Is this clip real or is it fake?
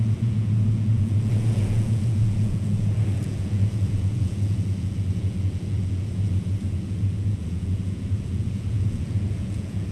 fake